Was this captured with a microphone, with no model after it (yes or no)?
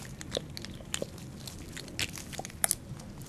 yes